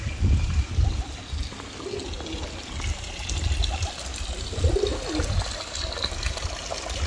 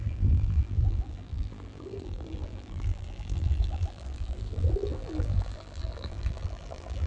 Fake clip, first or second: second